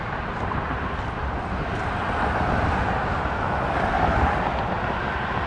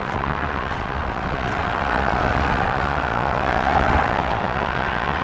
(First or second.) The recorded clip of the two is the first